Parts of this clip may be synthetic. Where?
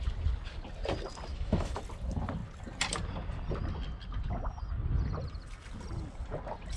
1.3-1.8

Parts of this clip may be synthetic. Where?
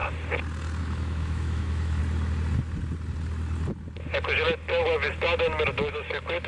0.8-2.0; 5.9-6.5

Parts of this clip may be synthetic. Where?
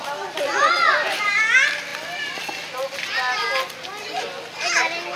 none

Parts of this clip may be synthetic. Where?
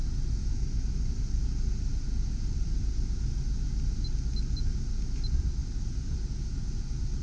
0.4-1.1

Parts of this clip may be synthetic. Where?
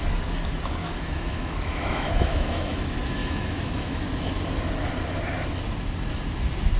0.8-2.8; 3.2-4.0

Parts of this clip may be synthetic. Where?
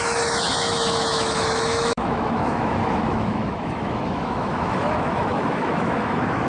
0.0-6.5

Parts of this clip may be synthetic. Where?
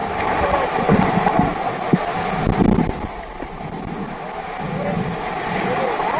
none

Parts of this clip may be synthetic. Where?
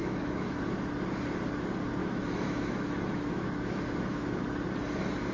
0.0-0.6; 2.0-4.4